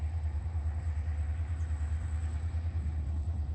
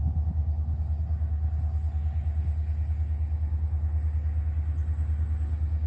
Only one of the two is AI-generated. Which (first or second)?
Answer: first